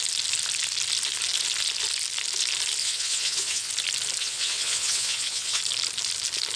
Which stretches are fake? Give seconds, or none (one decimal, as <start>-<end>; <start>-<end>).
2.8-3.7; 4.2-5.6